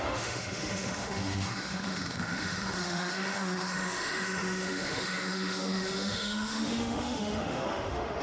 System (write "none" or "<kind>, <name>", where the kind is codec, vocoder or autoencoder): autoencoder, DAC-VAE